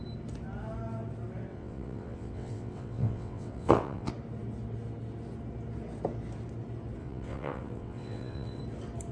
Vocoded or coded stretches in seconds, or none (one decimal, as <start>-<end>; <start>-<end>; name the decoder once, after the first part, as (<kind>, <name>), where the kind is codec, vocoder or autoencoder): 1.5-4.1 (vocoder, WaveNeXt); 7.0-8.6